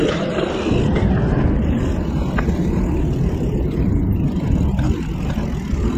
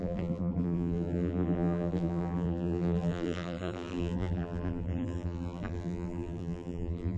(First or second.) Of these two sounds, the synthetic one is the second